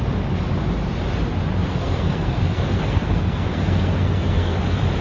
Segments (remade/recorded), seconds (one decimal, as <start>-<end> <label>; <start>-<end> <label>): 0.0-1.6 recorded; 1.6-4.6 remade; 4.6-5.0 recorded

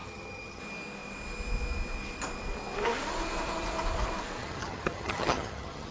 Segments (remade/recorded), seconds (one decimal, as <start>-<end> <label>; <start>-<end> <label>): 0.0-0.6 remade; 0.6-4.4 recorded; 4.4-5.9 remade